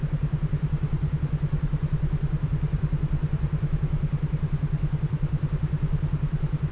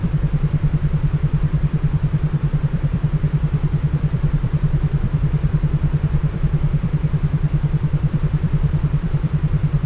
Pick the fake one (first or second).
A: second